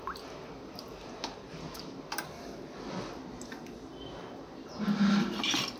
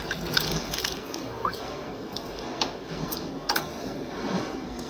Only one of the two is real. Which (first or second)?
first